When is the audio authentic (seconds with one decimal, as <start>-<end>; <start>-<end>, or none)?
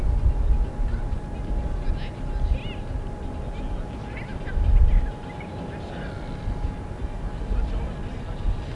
0.0-8.7